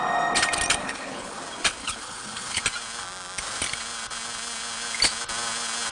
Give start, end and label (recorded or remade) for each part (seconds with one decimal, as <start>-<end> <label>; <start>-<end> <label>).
0.0-0.8 recorded; 0.8-1.4 remade; 1.4-1.8 recorded; 1.8-2.6 remade; 2.6-5.9 recorded